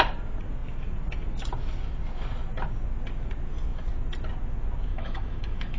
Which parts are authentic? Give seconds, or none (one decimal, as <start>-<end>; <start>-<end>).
0.0-4.9